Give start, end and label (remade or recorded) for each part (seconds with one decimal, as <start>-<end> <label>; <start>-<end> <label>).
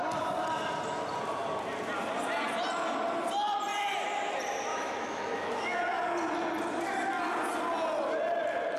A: 0.0-4.7 recorded; 4.7-5.8 remade; 5.8-8.8 recorded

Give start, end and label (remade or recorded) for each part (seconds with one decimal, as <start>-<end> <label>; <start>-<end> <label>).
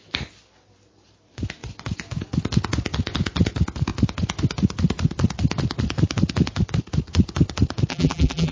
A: 0.0-7.9 recorded; 7.9-8.5 remade